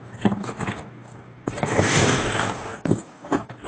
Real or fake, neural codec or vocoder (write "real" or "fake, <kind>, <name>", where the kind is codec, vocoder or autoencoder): fake, codec, DAC